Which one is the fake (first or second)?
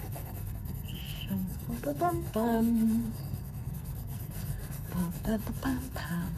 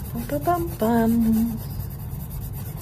first